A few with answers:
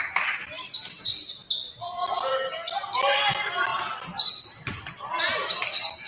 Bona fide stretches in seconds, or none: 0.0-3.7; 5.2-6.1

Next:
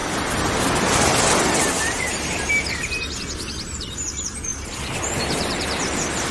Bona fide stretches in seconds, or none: 0.0-6.3

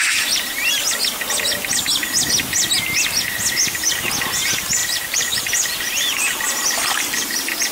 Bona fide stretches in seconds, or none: 0.0-4.8; 5.4-7.7

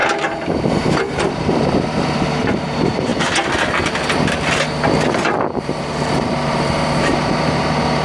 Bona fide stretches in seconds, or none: 0.0-0.7; 3.1-5.6